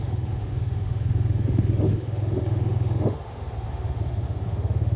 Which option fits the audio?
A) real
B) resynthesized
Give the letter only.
B